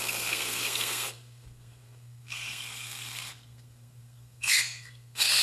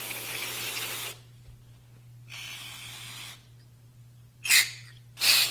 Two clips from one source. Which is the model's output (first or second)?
first